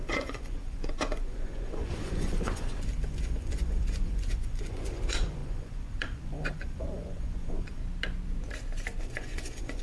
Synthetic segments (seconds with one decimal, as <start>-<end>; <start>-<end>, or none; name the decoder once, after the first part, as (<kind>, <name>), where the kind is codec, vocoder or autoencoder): 0.0-7.8 (vocoder, Vocos); 9.0-9.8